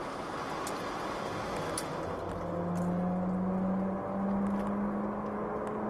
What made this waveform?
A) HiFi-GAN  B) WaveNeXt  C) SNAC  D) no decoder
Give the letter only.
D